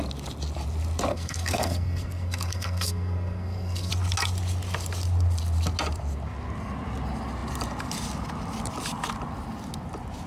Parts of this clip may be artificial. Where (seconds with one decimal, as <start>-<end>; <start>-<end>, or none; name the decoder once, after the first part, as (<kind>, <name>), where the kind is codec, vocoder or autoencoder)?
1.1-3.9 (codec, SNAC)